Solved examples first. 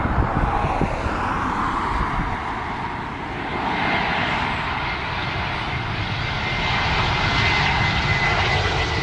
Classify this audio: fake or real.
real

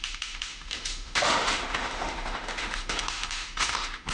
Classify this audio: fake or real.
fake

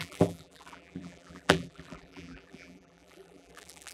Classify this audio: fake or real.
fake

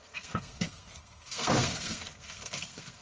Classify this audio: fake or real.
fake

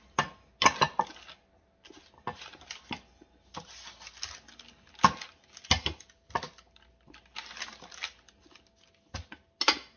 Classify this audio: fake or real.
real